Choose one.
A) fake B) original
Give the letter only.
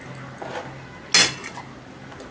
B